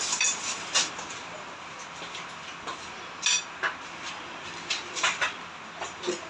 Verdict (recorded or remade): recorded